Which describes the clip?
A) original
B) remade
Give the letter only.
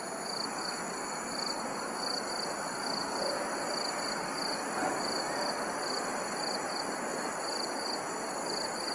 A